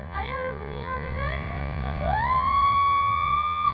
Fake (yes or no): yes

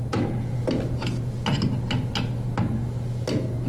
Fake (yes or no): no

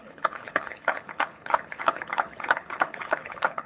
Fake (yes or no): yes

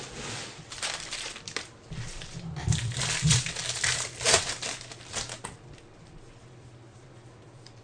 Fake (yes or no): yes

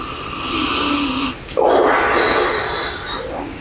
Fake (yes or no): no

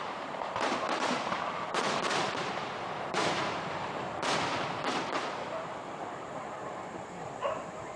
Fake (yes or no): yes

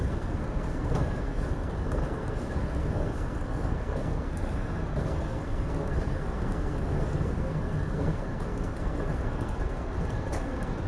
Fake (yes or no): yes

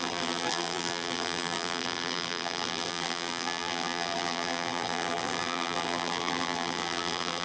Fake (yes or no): yes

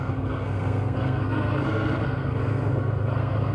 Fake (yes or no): yes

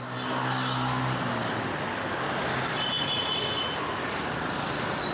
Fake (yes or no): no